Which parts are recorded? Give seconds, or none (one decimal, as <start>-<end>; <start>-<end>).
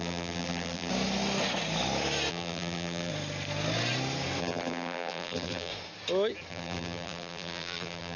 0.9-2.3; 3.1-4.4; 5.7-6.5